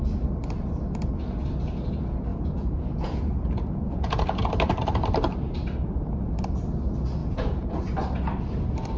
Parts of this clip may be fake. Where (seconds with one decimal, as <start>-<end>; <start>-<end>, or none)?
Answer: 2.3-4.5; 7.2-7.8